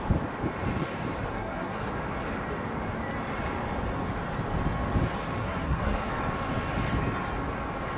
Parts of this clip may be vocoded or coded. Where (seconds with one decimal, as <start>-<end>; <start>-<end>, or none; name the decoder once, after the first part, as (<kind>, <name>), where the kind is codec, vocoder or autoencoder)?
1.3-1.9 (codec, SNAC); 5.4-6.1